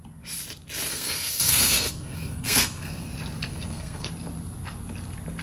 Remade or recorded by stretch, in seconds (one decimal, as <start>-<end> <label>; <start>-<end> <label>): 0.0-0.9 recorded; 0.9-3.1 remade; 3.1-3.5 recorded; 3.5-4.1 remade; 4.1-5.4 recorded